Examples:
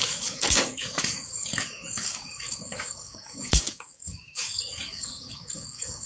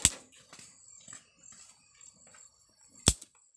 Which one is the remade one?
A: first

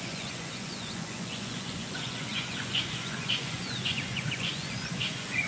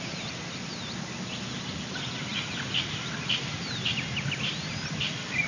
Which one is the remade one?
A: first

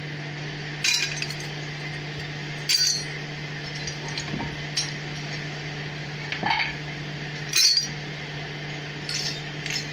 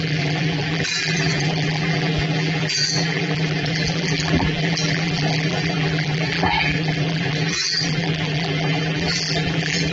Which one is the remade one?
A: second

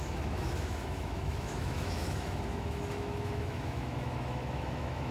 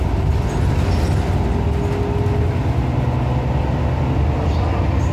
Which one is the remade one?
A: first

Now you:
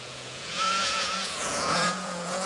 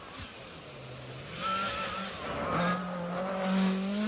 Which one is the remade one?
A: first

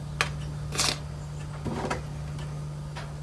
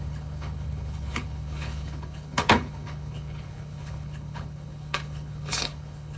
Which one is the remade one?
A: second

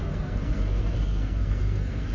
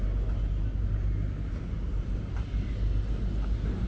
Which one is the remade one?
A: first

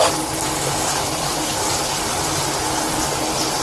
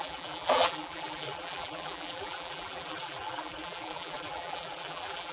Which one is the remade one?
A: second